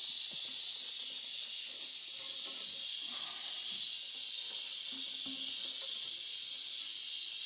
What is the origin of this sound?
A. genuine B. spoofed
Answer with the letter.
A